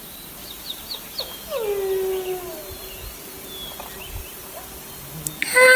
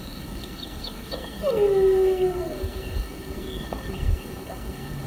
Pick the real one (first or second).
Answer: first